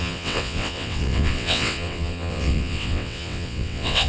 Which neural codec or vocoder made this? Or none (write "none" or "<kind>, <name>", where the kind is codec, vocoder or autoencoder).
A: vocoder, WaveNeXt